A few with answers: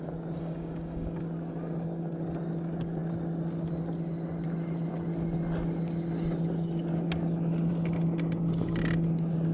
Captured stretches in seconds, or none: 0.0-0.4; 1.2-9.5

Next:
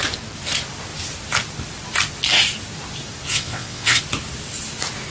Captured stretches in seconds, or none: 0.0-3.3; 4.0-5.1

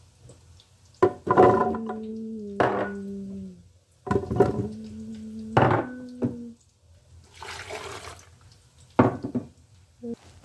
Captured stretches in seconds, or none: 0.0-8.5; 9.3-10.4

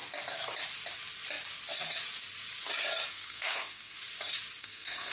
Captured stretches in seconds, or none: 0.0-3.1; 4.0-4.6

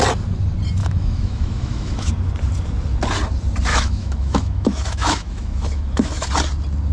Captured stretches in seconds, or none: 0.0-0.8; 2.1-3.7; 6.3-6.9

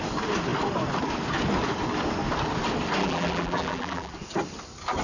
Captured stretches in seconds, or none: 0.0-3.0; 4.1-5.0